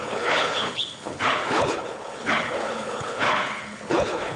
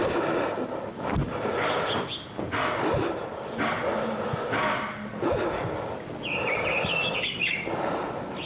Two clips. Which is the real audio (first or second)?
second